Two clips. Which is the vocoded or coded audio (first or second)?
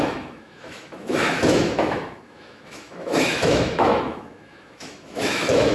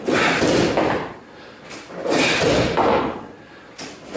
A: first